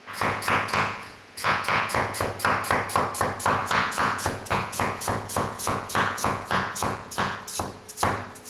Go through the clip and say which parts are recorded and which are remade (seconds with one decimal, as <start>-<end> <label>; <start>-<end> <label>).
0.0-2.3 remade; 2.3-3.6 recorded; 3.6-7.4 remade; 7.4-8.5 recorded